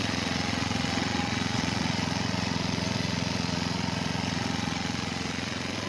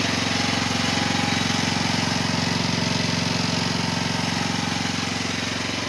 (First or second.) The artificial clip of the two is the first